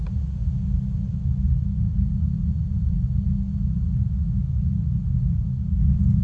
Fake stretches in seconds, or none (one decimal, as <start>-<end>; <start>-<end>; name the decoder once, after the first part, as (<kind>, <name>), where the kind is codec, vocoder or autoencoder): none